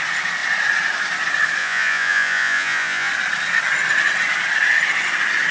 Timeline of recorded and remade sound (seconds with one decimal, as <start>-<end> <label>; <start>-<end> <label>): 0.0-1.6 recorded; 1.6-3.1 remade; 3.1-5.5 recorded